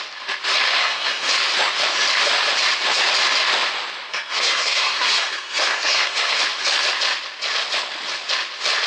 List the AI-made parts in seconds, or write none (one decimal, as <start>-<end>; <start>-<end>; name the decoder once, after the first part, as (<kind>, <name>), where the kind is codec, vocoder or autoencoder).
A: 0.8-1.3 (codec, SNAC); 4.1-6.4